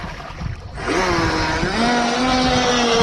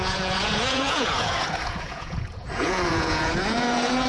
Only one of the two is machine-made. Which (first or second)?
second